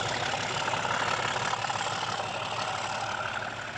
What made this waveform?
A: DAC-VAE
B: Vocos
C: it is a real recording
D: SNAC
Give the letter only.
C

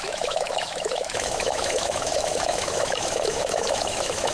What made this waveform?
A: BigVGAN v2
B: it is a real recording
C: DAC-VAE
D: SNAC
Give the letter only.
C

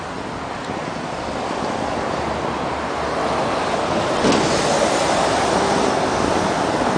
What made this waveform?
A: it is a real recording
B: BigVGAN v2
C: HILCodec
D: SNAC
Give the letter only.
A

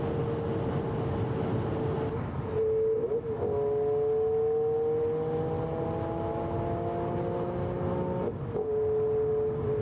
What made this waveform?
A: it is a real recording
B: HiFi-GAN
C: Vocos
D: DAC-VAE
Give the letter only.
A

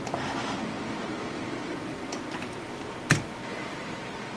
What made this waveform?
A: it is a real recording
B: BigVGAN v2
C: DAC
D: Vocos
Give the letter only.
A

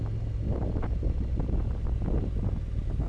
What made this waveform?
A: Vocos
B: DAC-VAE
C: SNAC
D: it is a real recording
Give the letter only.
D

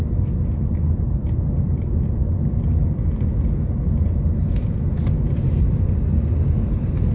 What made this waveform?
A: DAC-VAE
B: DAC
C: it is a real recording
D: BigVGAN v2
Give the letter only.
C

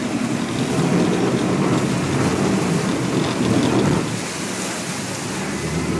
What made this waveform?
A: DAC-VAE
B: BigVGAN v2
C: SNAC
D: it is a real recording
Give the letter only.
D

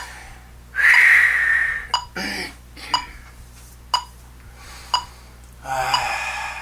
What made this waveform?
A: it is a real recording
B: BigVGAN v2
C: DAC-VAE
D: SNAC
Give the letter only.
A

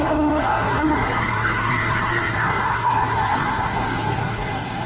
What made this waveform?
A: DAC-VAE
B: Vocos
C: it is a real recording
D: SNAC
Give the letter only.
D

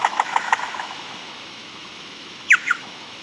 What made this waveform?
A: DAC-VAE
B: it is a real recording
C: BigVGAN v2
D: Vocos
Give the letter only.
A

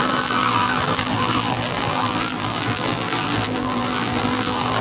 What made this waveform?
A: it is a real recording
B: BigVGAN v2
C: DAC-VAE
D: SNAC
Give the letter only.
B